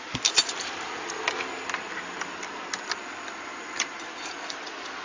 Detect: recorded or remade recorded